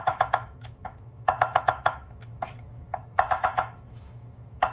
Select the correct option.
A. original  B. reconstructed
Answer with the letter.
B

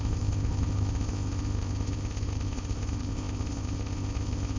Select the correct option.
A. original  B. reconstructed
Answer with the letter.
B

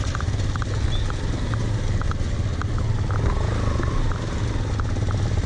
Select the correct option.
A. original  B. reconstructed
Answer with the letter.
A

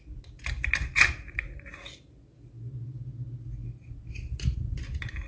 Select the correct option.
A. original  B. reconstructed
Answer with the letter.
A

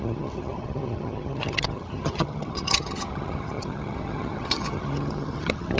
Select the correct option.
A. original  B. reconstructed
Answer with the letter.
B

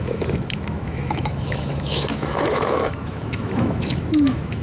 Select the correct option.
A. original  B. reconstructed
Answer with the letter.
B